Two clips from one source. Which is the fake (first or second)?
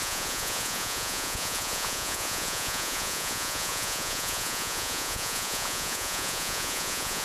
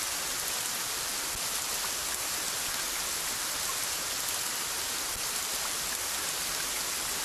first